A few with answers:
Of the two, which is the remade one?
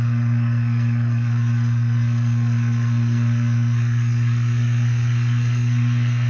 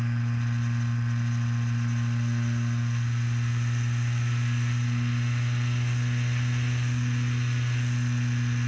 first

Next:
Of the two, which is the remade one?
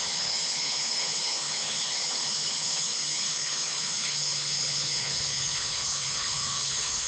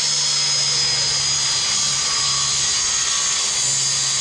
first